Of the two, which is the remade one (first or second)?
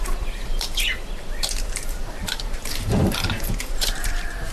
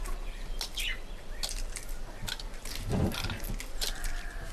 first